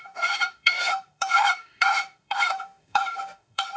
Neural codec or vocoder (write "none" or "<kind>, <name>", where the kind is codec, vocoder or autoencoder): autoencoder, DAC-VAE